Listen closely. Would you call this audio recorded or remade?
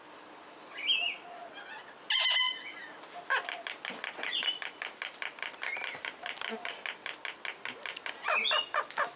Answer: recorded